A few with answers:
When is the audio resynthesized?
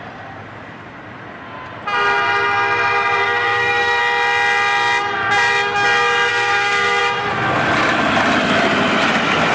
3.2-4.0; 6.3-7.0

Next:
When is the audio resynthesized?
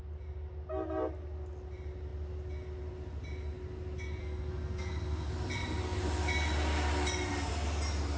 4.2-5.3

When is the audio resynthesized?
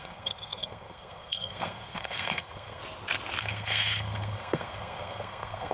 0.0-2.8; 3.4-5.7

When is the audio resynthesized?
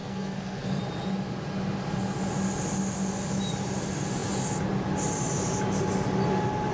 0.0-0.8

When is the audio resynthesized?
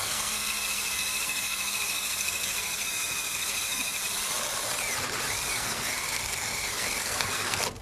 0.0-4.0; 5.5-7.8